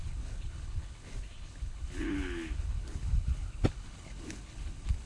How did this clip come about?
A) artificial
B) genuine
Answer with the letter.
A